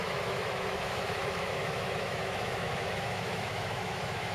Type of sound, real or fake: fake